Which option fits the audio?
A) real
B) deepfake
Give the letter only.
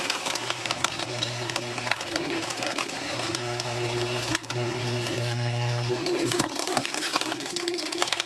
B